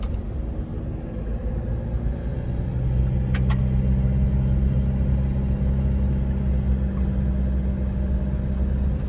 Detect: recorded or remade recorded